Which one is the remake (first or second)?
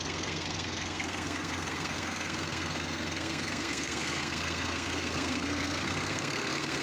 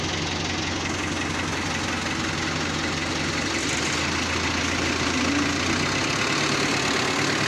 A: first